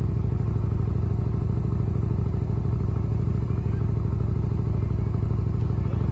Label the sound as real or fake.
real